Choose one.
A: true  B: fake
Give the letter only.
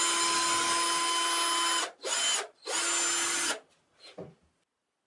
A